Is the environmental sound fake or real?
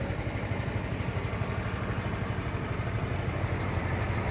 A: real